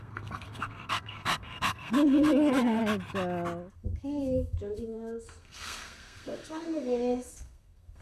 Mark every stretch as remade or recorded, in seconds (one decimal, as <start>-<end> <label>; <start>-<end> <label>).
0.0-2.8 remade; 2.8-3.7 recorded; 3.7-8.0 remade